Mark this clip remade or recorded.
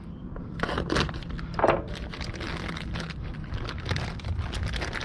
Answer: recorded